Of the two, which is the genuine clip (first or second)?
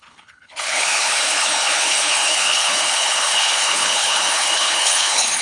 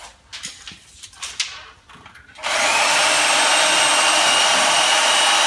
second